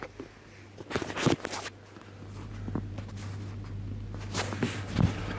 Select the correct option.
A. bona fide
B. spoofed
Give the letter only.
A